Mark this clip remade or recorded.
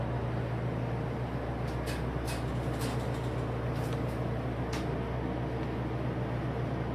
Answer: recorded